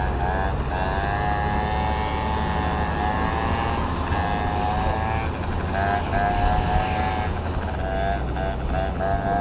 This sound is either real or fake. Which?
real